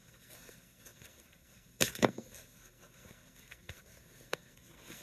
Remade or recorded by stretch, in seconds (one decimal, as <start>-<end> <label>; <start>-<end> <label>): 0.0-5.0 remade